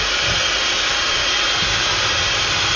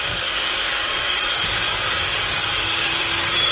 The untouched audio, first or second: first